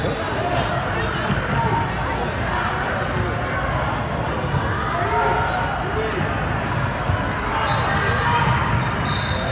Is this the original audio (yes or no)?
yes